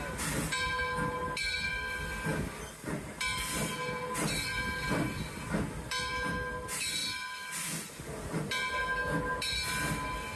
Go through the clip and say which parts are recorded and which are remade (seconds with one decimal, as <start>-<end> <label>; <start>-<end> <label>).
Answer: 0.0-10.4 recorded